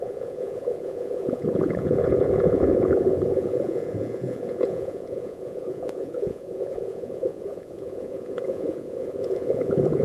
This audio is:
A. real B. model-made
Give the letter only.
B